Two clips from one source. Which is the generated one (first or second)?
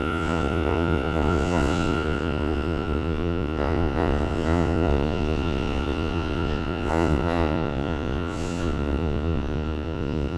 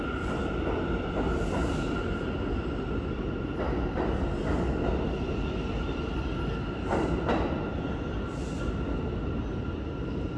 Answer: first